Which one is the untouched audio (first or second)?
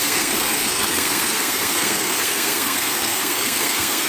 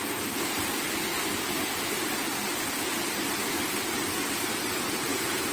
second